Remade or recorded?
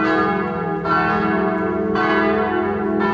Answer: recorded